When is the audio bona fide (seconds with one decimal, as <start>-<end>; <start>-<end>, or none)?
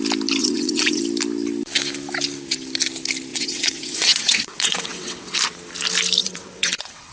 0.0-0.4; 1.0-3.3; 5.4-6.2